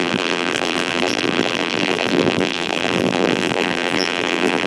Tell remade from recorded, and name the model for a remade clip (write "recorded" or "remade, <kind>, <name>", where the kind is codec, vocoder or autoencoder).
remade, vocoder, BigVGAN v2